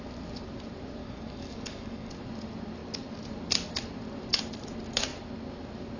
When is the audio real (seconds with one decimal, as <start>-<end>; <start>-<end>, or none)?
0.0-1.0; 2.1-6.0